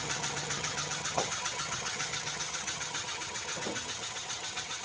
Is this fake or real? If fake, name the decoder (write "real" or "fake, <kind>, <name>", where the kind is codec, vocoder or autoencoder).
fake, vocoder, HiFi-GAN